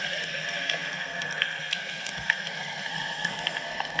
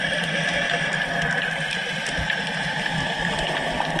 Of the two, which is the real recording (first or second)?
second